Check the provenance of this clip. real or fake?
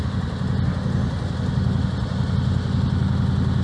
real